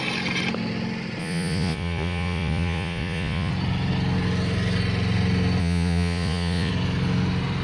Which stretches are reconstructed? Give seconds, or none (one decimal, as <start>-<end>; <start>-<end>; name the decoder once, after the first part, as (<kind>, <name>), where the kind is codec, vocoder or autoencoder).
1.2-3.5 (vocoder, Vocos); 5.6-6.7